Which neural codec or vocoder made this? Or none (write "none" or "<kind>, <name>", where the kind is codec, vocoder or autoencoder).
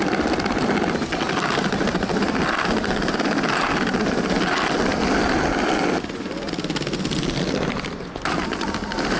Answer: none